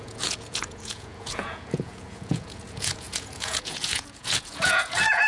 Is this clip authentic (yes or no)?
no